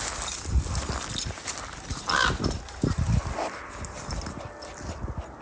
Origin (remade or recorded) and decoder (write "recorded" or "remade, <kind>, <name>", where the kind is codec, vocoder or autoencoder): recorded